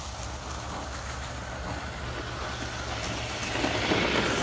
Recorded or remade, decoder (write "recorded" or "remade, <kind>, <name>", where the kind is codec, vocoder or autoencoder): recorded